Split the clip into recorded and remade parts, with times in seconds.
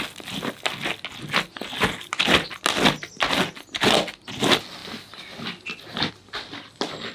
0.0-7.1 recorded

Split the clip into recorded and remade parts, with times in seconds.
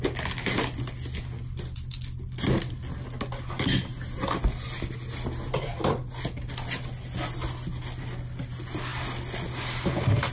0.0-10.3 recorded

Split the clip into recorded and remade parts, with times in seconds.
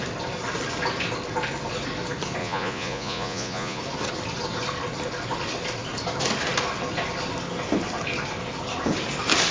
0.0-2.4 recorded; 2.4-3.8 remade; 3.8-9.5 recorded